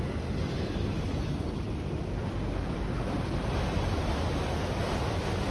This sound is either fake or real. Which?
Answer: real